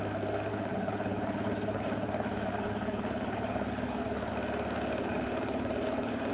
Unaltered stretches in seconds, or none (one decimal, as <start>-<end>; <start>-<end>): 0.0-0.5; 4.3-5.0